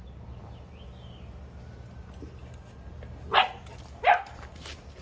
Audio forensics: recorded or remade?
recorded